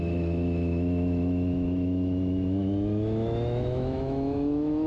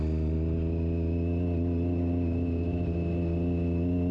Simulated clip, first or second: first